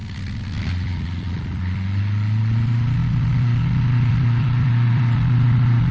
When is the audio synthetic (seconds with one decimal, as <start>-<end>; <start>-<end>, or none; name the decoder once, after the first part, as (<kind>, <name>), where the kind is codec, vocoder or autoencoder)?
none